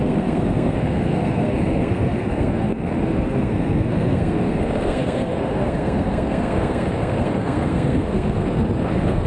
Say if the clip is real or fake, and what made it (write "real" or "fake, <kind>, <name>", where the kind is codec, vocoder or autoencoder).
fake, codec, SNAC